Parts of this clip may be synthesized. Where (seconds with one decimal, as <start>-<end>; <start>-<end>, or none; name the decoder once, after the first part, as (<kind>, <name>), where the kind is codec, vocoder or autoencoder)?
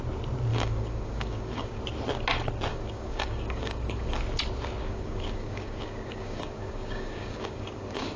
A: 0.5-1.8 (codec, DAC); 2.7-4.2; 4.8-8.2